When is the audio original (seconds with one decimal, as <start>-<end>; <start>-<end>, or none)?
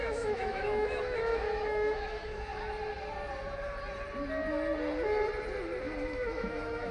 2.5-5.8